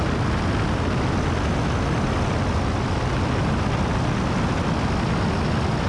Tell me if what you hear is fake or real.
real